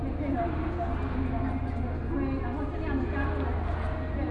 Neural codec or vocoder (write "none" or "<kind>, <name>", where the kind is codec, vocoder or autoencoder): none